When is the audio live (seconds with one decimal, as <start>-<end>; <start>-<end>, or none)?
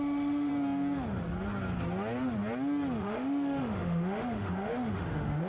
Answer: 0.5-3.0